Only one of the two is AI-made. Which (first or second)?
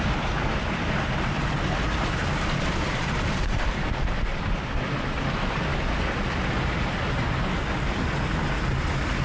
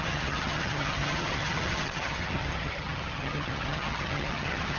second